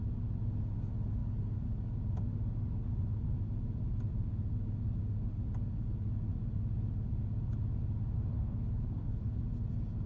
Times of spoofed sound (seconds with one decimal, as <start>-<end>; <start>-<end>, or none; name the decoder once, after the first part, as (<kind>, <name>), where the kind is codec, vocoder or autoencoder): 8.3-9.4 (codec, HILCodec)